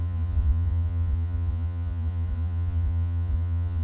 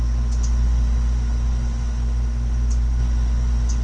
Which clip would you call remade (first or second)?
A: first